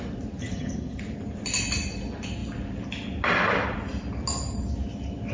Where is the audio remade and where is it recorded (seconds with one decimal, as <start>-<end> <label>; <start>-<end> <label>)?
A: 0.0-0.4 recorded; 0.4-1.0 remade; 1.0-5.3 recorded